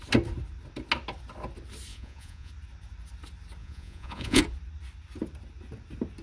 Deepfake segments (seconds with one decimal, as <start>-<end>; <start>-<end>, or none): 1.9-2.5; 3.6-4.4